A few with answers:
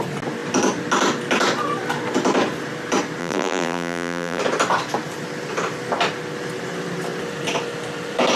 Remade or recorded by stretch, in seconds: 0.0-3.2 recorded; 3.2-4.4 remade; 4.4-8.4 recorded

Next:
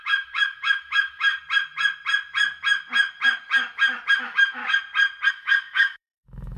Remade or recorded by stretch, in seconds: 0.0-1.3 remade; 1.3-4.1 recorded; 4.1-4.6 remade; 4.6-5.3 recorded; 5.3-6.6 remade